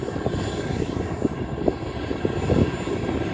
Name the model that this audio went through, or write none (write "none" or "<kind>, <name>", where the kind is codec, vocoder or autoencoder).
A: none